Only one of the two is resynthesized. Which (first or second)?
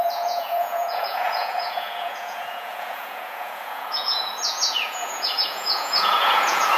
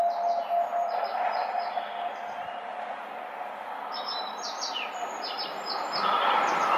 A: first